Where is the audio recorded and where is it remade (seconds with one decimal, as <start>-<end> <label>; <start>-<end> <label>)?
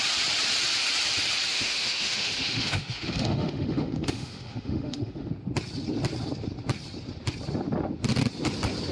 0.0-1.5 recorded; 1.5-5.3 remade; 5.3-8.9 recorded